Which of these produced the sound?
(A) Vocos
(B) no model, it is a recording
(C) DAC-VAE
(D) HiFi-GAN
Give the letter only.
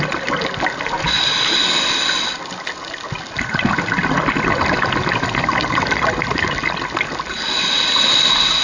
B